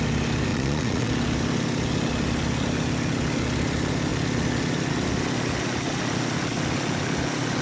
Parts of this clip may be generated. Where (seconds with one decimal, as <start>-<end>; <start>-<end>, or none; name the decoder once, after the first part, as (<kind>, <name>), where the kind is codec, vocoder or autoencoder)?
0.5-1.1 (vocoder, Vocos)

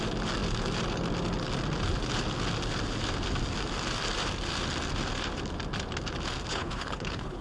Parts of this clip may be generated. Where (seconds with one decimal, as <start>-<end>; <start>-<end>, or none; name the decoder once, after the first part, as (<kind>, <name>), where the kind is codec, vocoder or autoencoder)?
6.5-7.4 (codec, HILCodec)

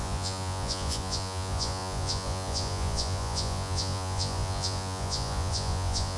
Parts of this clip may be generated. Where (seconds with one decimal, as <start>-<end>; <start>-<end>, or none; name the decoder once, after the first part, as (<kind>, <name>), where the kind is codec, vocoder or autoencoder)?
0.0-6.2 (vocoder, Vocos)

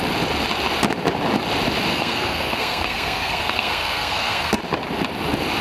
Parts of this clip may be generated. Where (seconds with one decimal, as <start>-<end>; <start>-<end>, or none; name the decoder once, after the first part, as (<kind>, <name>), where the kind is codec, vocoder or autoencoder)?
1.9-4.6 (codec, SNAC)

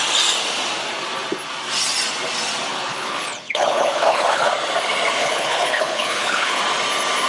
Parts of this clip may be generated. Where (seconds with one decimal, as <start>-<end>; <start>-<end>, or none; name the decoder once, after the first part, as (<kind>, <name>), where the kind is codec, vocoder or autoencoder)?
2.7-4.5 (codec, HILCodec); 5.2-6.6

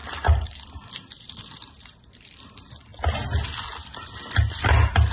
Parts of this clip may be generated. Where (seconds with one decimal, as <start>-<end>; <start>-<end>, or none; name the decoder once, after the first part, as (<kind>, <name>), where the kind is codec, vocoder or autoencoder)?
0.0-2.9 (vocoder, BigVGAN v2); 4.6-5.1

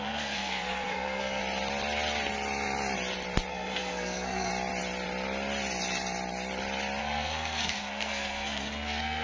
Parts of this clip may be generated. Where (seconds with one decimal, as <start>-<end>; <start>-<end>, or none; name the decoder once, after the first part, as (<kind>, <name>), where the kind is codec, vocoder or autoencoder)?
0.0-1.4 (codec, SNAC); 3.5-4.5; 7.0-9.2